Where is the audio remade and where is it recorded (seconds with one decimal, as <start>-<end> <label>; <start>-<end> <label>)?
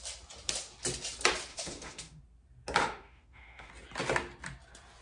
0.0-1.5 recorded; 1.5-2.2 remade; 2.2-2.8 recorded; 2.8-3.7 remade; 3.7-5.0 recorded